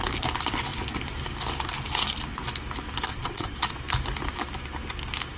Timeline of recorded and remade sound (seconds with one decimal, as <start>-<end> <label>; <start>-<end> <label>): 0.0-3.1 recorded; 3.1-3.7 remade; 3.7-5.4 recorded